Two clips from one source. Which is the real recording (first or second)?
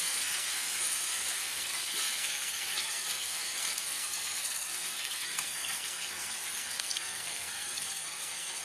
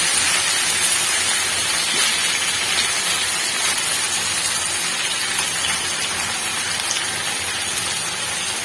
second